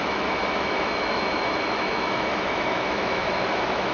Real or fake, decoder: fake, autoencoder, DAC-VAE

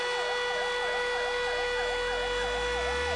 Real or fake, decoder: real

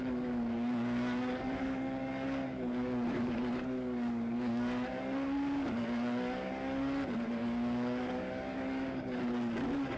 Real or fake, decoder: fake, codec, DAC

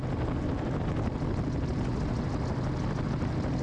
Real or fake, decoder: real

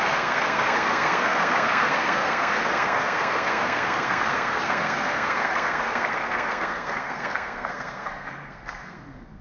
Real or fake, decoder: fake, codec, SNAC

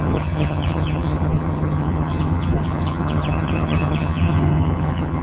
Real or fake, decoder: fake, vocoder, HiFi-GAN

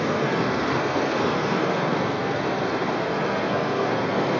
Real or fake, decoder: fake, codec, SNAC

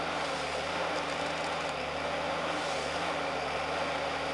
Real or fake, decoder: real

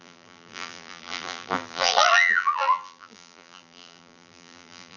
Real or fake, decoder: fake, vocoder, BigVGAN v2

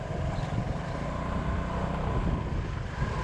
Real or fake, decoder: fake, vocoder, BigVGAN v2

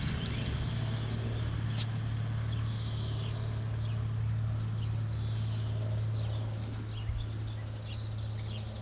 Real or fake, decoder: real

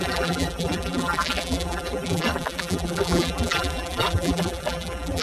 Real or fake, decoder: fake, vocoder, BigVGAN v2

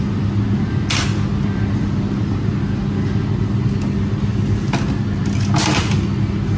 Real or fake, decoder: real